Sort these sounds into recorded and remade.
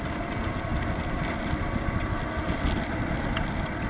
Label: recorded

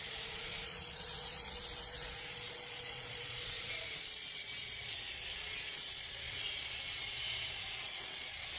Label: remade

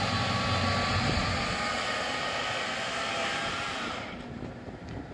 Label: recorded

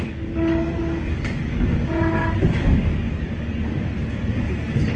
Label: remade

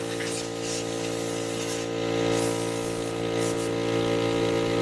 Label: recorded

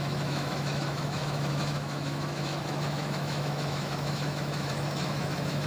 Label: remade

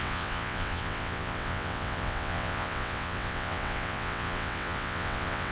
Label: remade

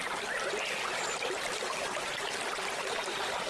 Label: remade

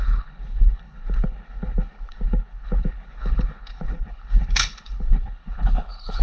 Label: remade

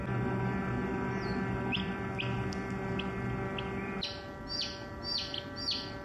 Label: recorded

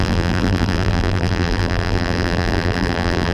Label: remade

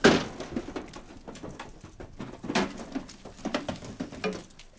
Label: recorded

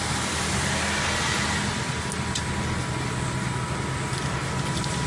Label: recorded